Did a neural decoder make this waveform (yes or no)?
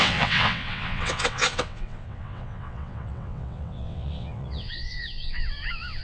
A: yes